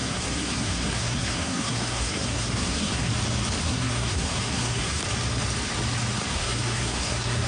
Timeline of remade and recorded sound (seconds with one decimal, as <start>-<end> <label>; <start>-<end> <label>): 0.0-3.1 remade; 3.1-3.6 recorded; 3.6-5.0 remade; 5.0-6.3 recorded; 6.3-7.5 remade